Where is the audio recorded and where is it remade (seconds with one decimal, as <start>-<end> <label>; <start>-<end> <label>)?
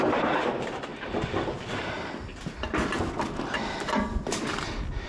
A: 0.0-5.1 recorded